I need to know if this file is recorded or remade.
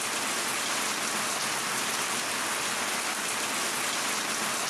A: recorded